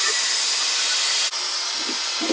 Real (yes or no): yes